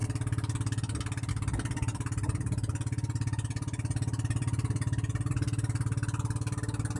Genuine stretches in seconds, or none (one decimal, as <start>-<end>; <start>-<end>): 0.0-7.0